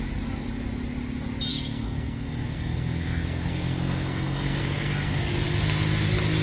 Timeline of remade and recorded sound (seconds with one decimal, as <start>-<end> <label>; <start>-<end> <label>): 0.0-1.5 recorded; 1.5-5.3 remade; 5.3-6.4 recorded